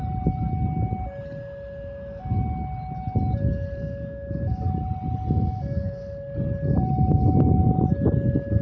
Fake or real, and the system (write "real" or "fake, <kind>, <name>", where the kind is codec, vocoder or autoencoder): real